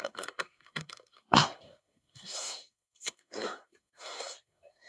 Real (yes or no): no